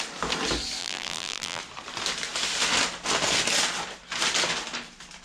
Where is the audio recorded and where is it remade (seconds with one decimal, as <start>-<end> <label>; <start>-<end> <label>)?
0.0-0.8 recorded; 0.8-1.6 remade; 1.6-5.2 recorded